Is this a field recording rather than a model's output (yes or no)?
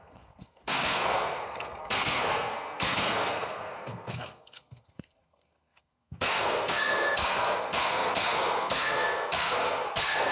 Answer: no